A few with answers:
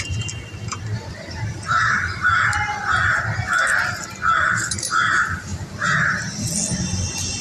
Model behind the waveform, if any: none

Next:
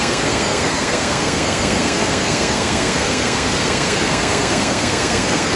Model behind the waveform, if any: codec, SNAC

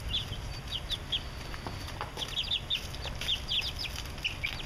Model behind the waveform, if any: none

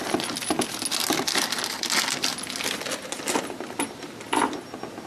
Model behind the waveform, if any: none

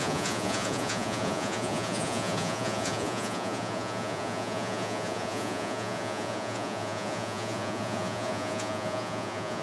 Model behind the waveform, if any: vocoder, Vocos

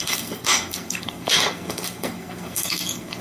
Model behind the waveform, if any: codec, SNAC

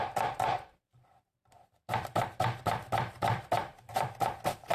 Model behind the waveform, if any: vocoder, BigVGAN v2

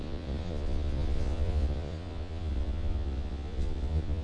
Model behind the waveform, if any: vocoder, Vocos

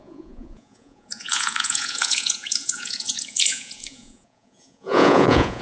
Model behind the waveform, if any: vocoder, Vocos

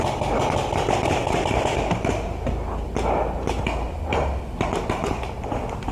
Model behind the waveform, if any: none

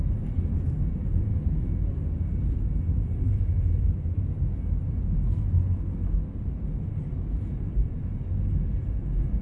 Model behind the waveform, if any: none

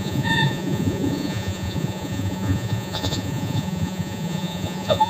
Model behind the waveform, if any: vocoder, Vocos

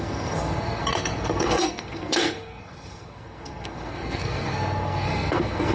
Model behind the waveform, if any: codec, SNAC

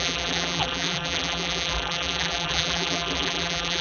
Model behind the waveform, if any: vocoder, BigVGAN v2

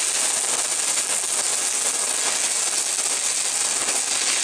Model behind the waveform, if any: none